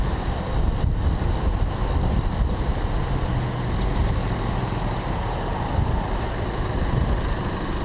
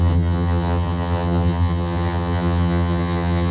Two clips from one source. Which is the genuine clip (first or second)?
first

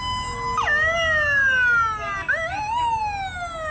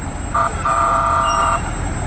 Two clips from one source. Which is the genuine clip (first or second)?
first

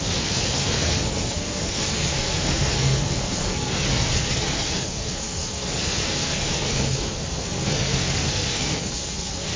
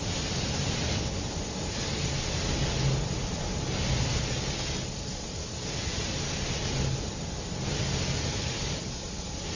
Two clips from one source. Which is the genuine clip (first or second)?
second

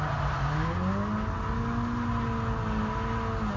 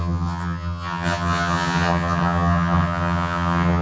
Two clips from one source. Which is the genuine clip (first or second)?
first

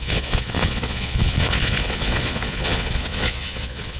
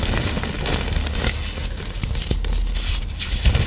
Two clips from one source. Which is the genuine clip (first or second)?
second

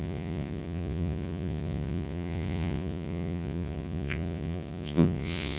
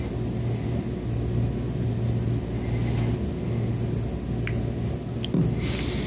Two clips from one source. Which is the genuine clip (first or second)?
second